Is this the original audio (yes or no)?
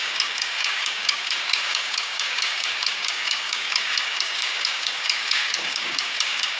no